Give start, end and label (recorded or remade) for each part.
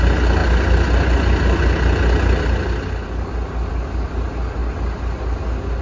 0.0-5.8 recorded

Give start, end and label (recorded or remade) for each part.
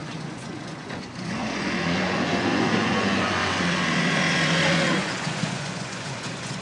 0.0-6.6 remade